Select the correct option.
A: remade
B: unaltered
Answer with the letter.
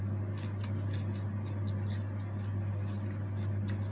B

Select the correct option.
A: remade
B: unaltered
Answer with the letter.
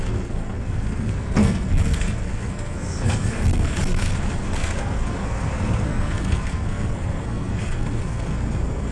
A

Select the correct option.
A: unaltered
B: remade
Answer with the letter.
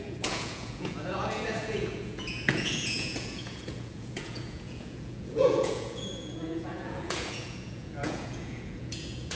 B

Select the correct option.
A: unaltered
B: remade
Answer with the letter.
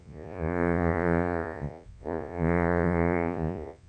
B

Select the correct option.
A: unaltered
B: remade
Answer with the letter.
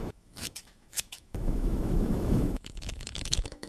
B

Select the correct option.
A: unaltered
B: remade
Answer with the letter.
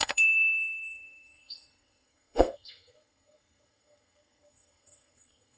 B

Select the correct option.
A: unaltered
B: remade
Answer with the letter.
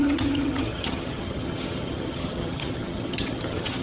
B